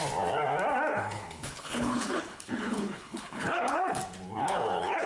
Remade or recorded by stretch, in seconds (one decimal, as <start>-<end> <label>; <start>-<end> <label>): 0.0-0.9 recorded; 0.9-4.0 remade; 4.0-4.4 recorded; 4.4-5.1 remade